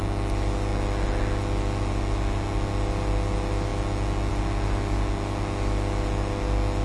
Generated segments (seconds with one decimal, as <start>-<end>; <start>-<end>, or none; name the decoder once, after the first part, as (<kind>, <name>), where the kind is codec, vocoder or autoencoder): none